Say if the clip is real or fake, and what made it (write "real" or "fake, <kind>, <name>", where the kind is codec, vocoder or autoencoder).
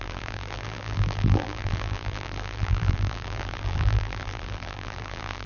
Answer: fake, vocoder, BigVGAN v2